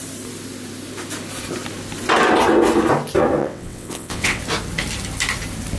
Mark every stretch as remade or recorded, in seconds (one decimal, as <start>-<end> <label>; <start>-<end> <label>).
0.0-3.4 recorded; 3.4-4.4 remade; 4.4-5.8 recorded

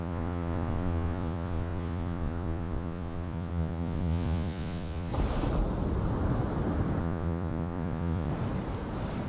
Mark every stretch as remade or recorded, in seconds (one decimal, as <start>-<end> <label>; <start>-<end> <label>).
0.0-5.1 remade; 5.1-7.0 recorded; 7.0-8.3 remade; 8.3-9.3 recorded

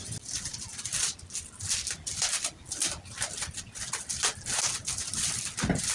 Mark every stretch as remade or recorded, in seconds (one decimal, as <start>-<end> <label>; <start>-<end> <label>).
0.0-5.9 recorded

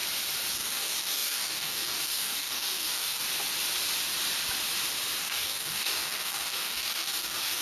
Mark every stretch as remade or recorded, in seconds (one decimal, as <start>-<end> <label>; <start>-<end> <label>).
0.0-0.5 recorded; 0.5-3.2 remade; 3.2-5.2 recorded; 5.2-7.6 remade